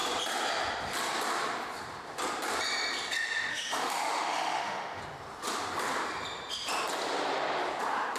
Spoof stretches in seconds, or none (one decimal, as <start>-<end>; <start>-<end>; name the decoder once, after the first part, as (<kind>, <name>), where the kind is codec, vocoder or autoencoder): 3.5-5.0 (autoencoder, DAC-VAE)